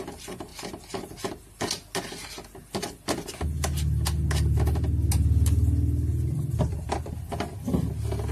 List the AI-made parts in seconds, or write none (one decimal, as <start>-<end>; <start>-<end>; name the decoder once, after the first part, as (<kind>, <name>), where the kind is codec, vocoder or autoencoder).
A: 0.5-1.3 (vocoder, BigVGAN v2); 6.1-7.1